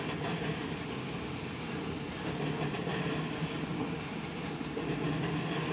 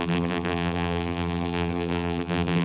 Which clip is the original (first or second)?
first